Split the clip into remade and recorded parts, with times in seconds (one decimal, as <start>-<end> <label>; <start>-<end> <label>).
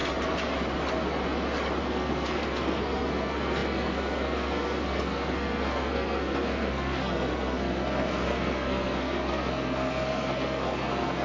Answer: 0.0-1.8 recorded; 1.8-11.2 remade